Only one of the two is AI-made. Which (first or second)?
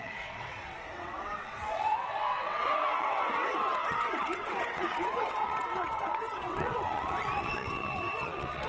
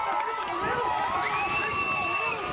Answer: first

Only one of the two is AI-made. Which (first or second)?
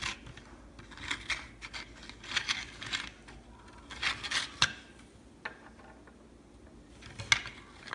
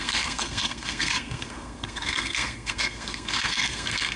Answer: second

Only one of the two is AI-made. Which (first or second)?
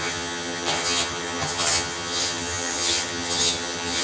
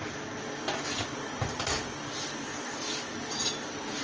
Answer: first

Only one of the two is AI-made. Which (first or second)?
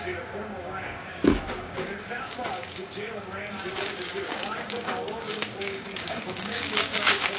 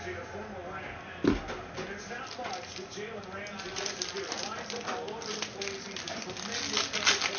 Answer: first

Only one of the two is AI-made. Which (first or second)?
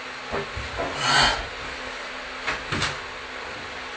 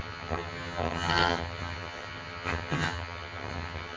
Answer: second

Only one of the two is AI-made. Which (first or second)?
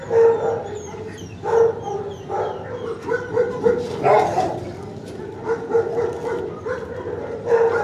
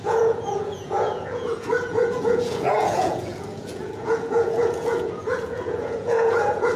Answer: second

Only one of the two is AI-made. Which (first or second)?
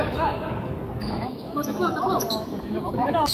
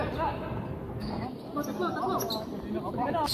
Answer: first